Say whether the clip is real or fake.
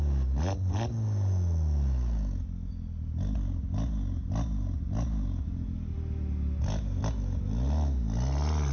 real